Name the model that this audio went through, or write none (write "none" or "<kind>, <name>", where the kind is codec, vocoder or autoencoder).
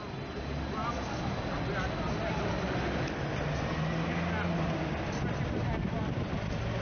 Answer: none